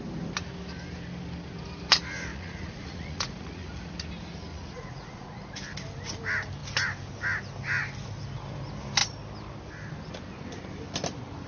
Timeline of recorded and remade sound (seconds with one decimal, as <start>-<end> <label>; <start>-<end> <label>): 0.0-2.3 recorded; 2.3-3.9 remade; 3.9-4.5 recorded; 4.5-5.4 remade; 5.4-11.5 recorded